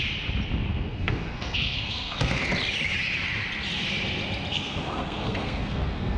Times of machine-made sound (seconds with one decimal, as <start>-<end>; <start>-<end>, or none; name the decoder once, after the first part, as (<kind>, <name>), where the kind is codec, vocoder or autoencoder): 0.7-2.4 (codec, SNAC); 4.5-6.2